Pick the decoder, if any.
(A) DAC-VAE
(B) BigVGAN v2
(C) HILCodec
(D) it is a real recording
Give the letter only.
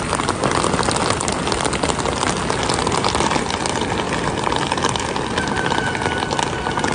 D